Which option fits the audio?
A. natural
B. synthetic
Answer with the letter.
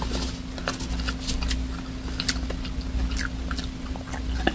A